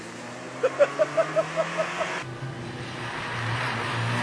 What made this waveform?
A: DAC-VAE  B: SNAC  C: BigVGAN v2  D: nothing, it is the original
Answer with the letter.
D